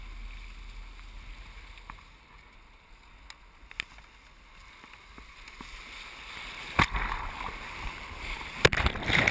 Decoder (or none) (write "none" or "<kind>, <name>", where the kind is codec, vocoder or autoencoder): none